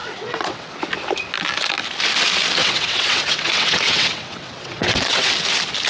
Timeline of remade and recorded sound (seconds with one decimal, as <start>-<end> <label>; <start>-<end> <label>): 0.0-0.7 remade; 0.7-2.6 recorded; 2.6-5.3 remade; 5.3-5.9 recorded